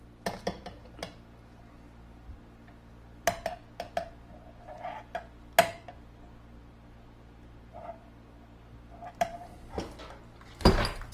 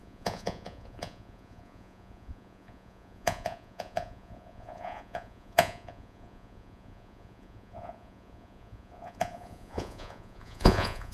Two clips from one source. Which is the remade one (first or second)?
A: second